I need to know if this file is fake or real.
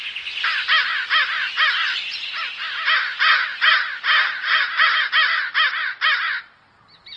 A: real